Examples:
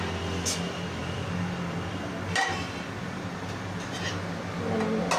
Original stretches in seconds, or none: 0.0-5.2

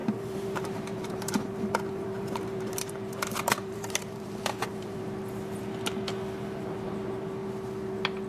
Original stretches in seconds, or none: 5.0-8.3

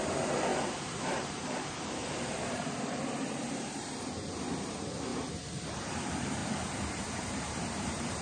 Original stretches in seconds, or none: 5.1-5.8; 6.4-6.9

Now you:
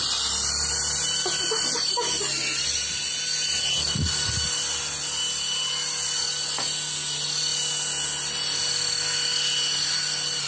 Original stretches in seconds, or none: 0.0-10.5